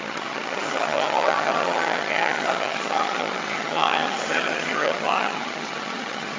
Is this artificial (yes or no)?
yes